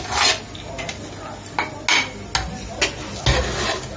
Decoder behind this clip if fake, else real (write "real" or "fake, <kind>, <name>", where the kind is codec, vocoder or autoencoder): real